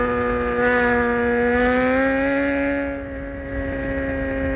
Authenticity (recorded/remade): recorded